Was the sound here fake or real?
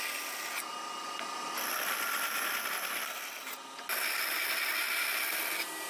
real